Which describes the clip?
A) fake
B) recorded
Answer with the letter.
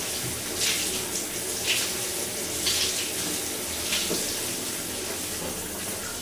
B